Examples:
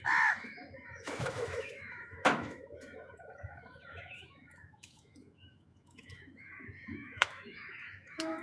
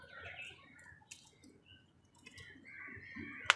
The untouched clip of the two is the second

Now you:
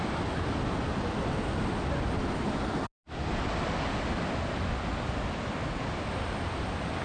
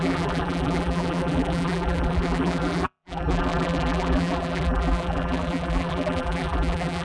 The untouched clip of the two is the first